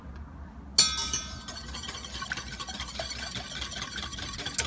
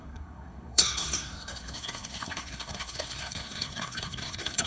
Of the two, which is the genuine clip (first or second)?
first